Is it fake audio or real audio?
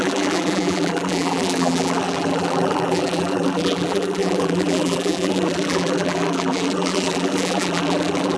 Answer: fake